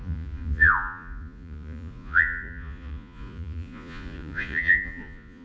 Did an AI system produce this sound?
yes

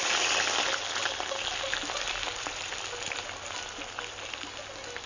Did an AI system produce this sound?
no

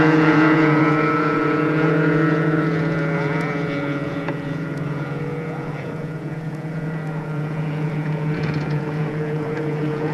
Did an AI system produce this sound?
yes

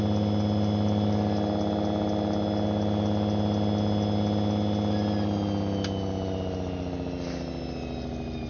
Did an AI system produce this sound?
no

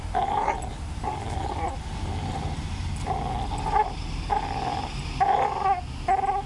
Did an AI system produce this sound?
no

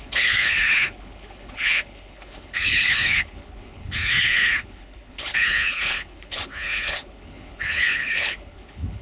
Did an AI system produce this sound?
yes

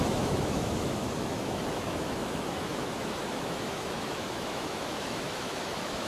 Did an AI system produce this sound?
yes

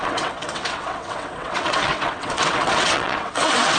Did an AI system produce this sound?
yes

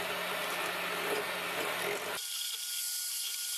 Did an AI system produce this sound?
no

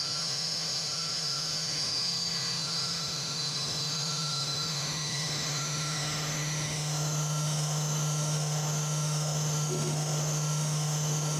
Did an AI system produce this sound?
yes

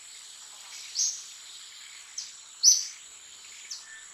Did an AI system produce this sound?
no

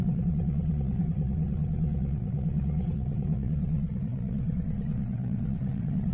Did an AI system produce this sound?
yes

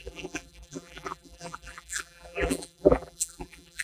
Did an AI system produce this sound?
yes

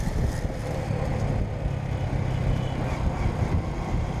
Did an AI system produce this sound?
no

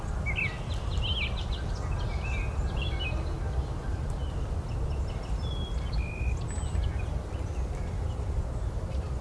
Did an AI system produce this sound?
no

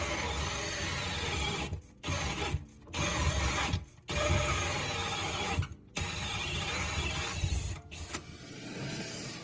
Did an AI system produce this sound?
no